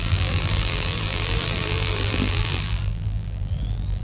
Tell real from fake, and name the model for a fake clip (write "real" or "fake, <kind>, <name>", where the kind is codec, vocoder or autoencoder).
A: fake, vocoder, BigVGAN v2